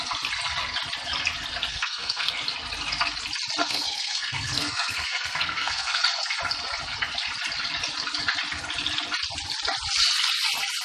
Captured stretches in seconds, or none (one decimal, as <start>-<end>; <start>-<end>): 0.0-1.7; 2.3-3.6; 6.0-10.8